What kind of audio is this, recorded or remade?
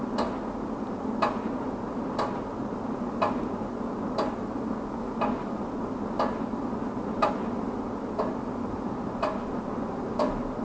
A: recorded